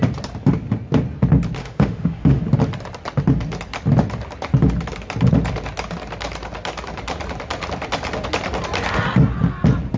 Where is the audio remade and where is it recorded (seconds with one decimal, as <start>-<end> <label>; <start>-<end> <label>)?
0.0-1.6 recorded; 1.6-2.4 remade; 2.4-10.0 recorded